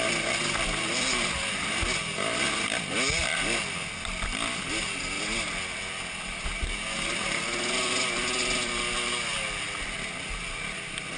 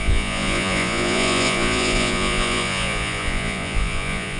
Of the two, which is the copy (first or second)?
second